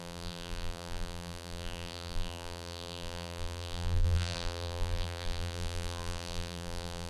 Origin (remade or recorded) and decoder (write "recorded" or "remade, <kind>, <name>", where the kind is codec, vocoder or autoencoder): remade, vocoder, BigVGAN v2